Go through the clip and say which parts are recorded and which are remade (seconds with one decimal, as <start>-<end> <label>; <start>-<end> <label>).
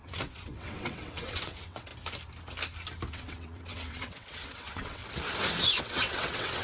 0.0-1.9 remade; 1.9-3.1 recorded; 3.1-5.0 remade; 5.0-5.8 recorded; 5.8-6.6 remade